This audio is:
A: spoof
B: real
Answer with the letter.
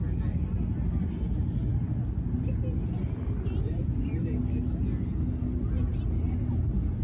B